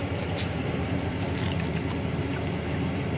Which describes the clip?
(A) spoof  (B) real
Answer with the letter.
A